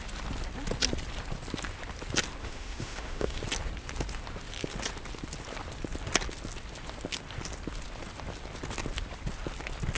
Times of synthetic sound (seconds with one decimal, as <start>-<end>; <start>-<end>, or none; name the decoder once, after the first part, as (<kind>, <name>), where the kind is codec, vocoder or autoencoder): 2.4-3.4 (autoencoder, DAC-VAE)